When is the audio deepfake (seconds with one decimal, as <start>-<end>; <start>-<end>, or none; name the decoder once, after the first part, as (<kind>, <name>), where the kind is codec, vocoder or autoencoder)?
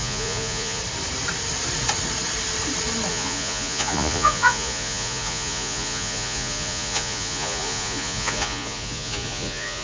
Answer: 0.0-0.8 (vocoder, Vocos); 3.1-9.8